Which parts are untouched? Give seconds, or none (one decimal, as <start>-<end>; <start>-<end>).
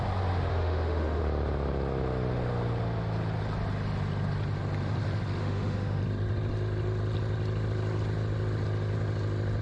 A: 0.0-0.5; 1.2-5.4; 6.0-9.6